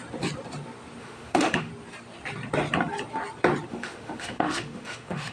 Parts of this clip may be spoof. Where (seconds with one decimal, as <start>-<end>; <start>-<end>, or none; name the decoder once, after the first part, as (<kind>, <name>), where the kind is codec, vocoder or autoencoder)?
1.0-1.7 (autoencoder, DAC-VAE); 3.7-5.3